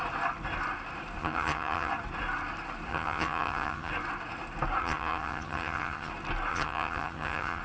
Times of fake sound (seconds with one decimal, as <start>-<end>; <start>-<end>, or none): 1.2-1.9; 2.9-3.9; 4.8-6.1; 6.5-7.6